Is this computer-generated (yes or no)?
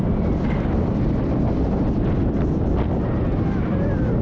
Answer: no